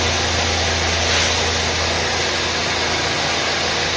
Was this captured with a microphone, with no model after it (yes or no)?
yes